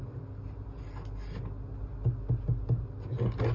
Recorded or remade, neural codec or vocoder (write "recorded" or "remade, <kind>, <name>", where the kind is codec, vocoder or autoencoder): recorded